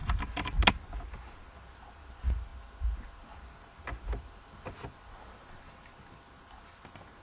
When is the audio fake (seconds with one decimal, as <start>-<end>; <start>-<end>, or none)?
none